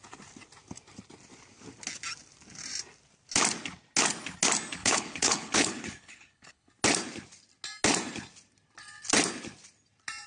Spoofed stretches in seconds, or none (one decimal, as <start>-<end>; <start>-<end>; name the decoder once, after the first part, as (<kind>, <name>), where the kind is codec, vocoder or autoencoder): 4.8-6.7 (codec, HILCodec)

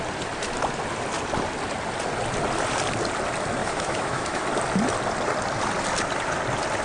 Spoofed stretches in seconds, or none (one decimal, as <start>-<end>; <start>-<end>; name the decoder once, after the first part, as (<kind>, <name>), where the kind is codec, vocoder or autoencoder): 3.6-4.4 (autoencoder, DAC-VAE)

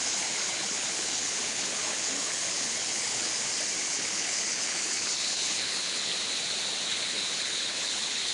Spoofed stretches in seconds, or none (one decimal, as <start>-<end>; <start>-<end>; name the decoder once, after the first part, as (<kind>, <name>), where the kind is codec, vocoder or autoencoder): 0.0-3.3 (codec, HILCodec); 3.9-6.1; 6.9-8.3

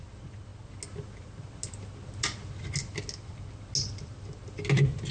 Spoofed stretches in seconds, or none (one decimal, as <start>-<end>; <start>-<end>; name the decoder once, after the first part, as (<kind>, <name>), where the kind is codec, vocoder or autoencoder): none

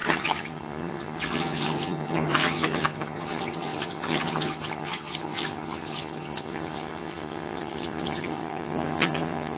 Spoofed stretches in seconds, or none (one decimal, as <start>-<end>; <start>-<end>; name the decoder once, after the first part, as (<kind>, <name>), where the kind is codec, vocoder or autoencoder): 0.0-9.6 (vocoder, HiFi-GAN)

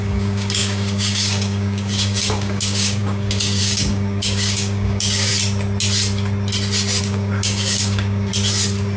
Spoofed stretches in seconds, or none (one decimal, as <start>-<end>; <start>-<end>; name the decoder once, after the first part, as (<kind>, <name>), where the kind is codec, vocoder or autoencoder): 0.0-5.3 (codec, DAC); 7.0-8.3

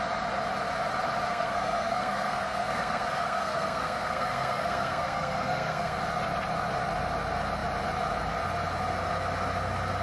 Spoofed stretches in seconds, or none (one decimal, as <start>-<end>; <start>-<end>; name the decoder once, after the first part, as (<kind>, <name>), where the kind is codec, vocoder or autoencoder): 1.3-6.0 (codec, SNAC)